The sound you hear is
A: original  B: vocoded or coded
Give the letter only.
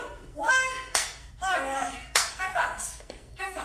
B